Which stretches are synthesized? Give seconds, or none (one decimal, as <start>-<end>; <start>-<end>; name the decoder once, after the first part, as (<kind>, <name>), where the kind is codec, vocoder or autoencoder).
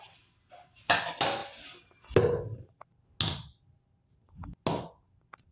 none